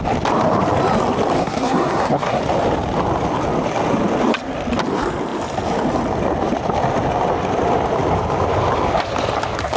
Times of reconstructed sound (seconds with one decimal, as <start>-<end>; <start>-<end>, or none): 1.4-2.4